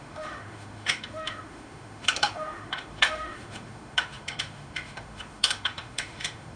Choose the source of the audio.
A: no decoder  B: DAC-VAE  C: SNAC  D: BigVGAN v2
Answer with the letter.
B